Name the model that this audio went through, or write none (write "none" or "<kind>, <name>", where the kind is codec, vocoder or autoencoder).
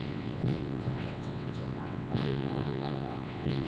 vocoder, WaveNeXt